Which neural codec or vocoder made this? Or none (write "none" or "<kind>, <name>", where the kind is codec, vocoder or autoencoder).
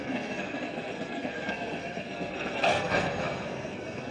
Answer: codec, SNAC